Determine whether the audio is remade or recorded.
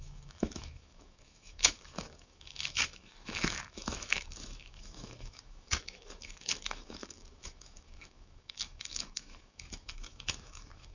remade